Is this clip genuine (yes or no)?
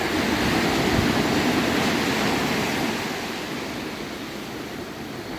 yes